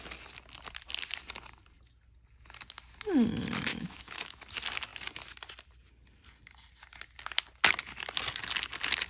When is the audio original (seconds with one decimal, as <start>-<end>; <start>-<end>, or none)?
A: 0.0-3.7; 4.4-9.1